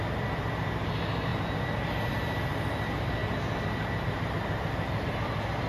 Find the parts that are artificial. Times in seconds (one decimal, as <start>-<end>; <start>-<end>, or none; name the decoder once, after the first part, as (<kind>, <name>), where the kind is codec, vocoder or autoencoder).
none